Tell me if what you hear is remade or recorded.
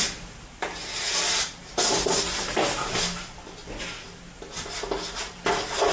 recorded